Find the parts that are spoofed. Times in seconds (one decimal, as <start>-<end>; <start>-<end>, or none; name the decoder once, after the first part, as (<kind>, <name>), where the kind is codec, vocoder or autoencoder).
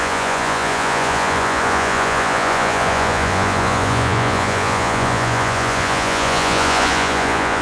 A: 0.0-7.6 (vocoder, Vocos)